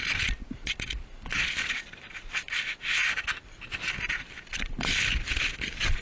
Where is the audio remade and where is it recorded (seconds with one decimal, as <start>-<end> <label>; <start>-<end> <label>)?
0.0-6.0 recorded